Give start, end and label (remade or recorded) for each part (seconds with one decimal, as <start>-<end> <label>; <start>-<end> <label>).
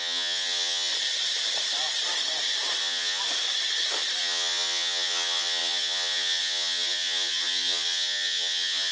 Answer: 0.0-0.9 remade; 0.9-2.8 recorded; 2.8-3.2 remade; 3.2-4.2 recorded; 4.2-8.9 remade